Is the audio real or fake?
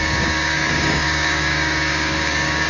fake